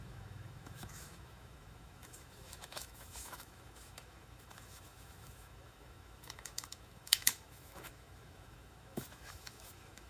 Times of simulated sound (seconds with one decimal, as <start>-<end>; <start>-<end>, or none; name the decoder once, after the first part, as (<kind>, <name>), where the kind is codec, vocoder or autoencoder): 0.0-10.1 (autoencoder, DAC-VAE)